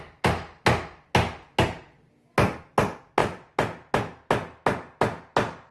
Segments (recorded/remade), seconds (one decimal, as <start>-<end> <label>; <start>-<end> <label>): 0.0-5.7 recorded